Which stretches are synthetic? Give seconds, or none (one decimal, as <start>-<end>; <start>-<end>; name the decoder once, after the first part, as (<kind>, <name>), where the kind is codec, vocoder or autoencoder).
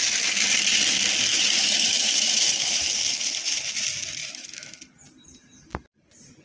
1.3-2.9 (autoencoder, DAC-VAE); 4.2-4.8